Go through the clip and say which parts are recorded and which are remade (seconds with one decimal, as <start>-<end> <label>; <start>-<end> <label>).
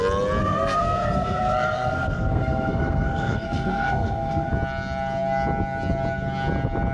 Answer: 0.0-0.4 recorded; 0.4-4.5 remade; 4.5-6.9 recorded